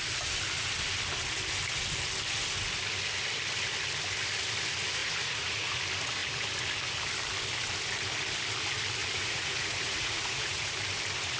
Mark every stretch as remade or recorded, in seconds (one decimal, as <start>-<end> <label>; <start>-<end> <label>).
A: 0.0-5.0 recorded; 5.0-5.7 remade; 5.7-9.0 recorded; 9.0-10.7 remade; 10.7-11.4 recorded

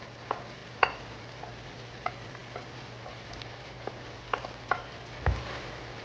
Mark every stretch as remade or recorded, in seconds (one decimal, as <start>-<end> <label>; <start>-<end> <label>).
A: 0.0-0.6 recorded; 0.6-1.5 remade; 1.5-6.0 recorded

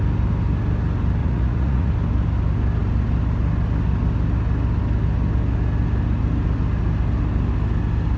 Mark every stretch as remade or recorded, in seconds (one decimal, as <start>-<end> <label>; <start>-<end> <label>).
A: 0.0-1.2 recorded; 1.2-1.9 remade; 1.9-8.2 recorded

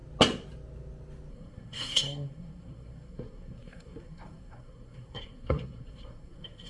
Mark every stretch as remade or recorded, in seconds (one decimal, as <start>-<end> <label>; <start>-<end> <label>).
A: 0.0-1.3 recorded; 1.3-6.7 remade

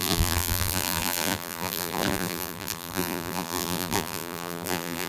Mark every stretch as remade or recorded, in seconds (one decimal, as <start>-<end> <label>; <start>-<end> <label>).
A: 0.0-5.1 remade

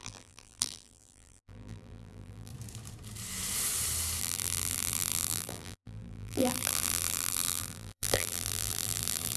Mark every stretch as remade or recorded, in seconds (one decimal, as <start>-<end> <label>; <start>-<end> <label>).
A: 0.0-2.5 remade; 2.5-4.2 recorded; 4.2-9.4 remade